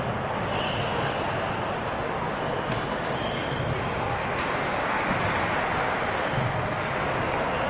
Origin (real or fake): real